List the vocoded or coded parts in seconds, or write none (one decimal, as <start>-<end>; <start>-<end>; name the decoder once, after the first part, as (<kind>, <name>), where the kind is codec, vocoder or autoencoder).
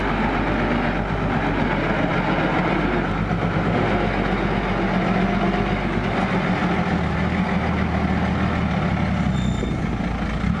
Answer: none